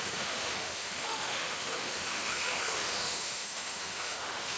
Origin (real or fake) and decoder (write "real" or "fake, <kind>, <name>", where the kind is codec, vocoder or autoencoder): fake, autoencoder, DAC-VAE